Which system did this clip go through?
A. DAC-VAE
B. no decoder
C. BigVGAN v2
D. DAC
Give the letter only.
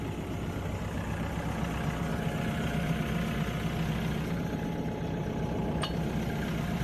B